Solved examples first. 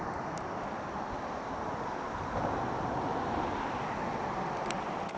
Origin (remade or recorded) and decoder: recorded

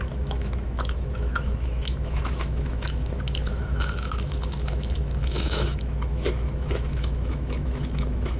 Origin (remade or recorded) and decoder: remade, autoencoder, DAC-VAE